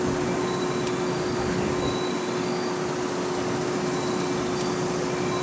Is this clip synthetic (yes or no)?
no